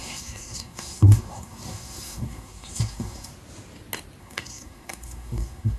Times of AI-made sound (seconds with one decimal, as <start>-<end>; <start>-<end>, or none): 0.0-3.3; 4.2-5.8